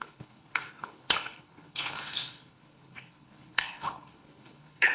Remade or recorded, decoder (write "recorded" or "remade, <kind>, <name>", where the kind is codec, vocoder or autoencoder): remade, codec, HILCodec